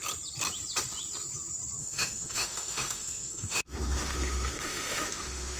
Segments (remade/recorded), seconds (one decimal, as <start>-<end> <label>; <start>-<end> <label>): 0.0-1.8 recorded; 1.8-5.6 remade